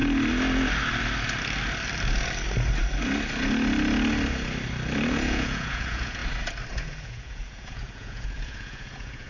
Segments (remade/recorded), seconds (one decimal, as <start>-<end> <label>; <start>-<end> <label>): 0.0-5.1 recorded; 5.1-6.2 remade; 6.2-6.7 recorded; 6.7-9.3 remade